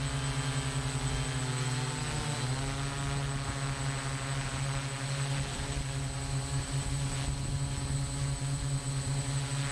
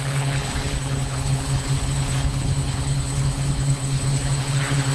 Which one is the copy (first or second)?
second